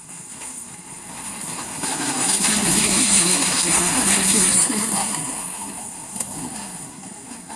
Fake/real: fake